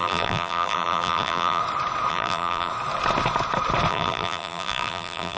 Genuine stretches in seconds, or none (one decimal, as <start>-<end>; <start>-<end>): 1.6-2.1; 2.7-3.9